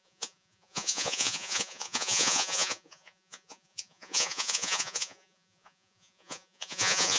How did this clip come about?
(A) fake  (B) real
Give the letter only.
A